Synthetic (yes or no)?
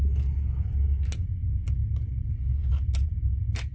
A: no